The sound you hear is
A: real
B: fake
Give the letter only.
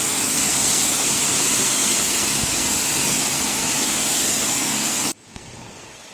B